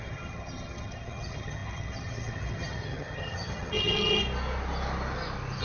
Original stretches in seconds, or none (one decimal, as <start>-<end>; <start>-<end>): 4.2-5.6